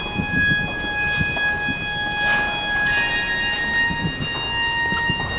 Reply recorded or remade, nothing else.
recorded